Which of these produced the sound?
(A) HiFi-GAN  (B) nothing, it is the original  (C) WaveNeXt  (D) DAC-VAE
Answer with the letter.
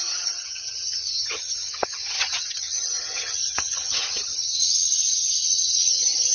A